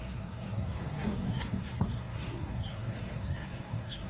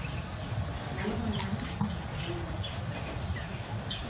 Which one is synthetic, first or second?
first